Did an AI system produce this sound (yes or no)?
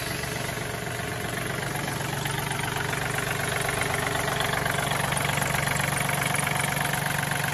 no